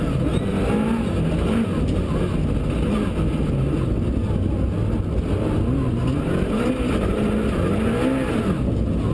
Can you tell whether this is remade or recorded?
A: recorded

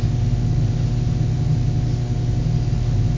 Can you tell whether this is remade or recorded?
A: recorded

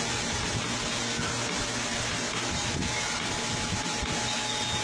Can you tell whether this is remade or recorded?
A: recorded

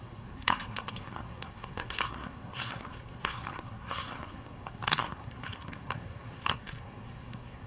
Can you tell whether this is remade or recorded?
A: remade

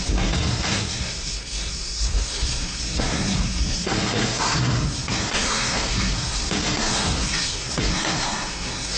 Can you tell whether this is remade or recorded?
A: remade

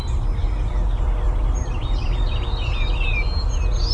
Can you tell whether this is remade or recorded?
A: recorded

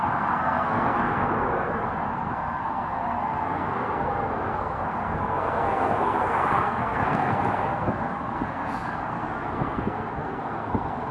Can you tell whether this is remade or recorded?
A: remade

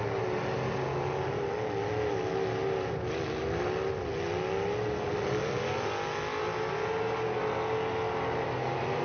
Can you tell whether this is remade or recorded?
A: recorded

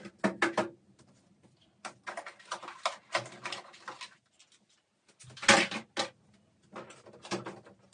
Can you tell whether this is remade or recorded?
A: recorded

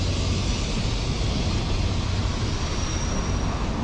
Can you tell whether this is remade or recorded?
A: recorded